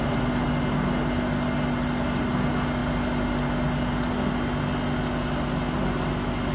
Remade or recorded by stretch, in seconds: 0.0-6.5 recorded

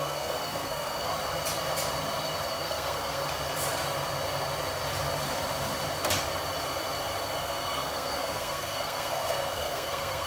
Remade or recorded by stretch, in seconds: 0.0-1.1 remade; 1.1-2.5 recorded; 2.5-3.2 remade; 3.2-7.4 recorded; 7.4-10.3 remade